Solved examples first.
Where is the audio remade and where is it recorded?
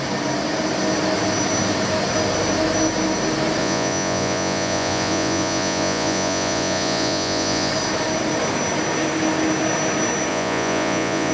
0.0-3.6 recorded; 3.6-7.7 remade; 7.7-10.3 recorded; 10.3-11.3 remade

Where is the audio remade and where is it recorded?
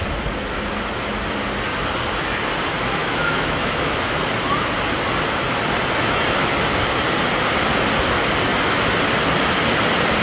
0.0-3.0 recorded; 3.0-4.3 remade; 4.3-10.2 recorded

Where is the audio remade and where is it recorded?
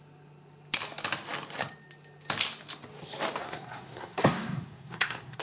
0.0-3.4 recorded; 3.4-5.4 remade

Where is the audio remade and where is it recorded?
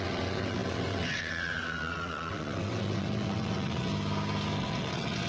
0.0-3.9 remade; 3.9-4.6 recorded; 4.6-5.3 remade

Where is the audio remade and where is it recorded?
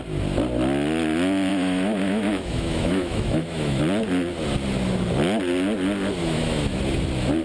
0.0-1.5 recorded; 1.5-3.8 remade; 3.8-6.2 recorded; 6.2-6.8 remade; 6.8-7.4 recorded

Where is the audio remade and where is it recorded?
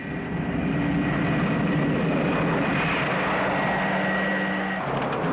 0.0-5.3 recorded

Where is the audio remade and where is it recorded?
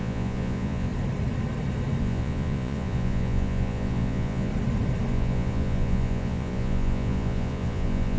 0.0-0.9 remade; 0.9-2.0 recorded; 2.0-4.5 remade; 4.5-5.1 recorded; 5.1-8.2 remade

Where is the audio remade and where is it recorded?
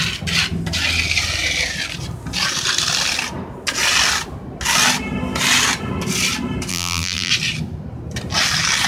0.0-6.7 recorded; 6.7-7.3 remade; 7.3-8.9 recorded